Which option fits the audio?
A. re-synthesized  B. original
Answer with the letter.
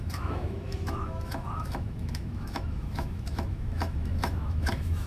A